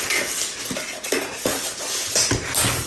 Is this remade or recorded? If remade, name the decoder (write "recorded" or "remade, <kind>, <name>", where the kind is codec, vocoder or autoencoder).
recorded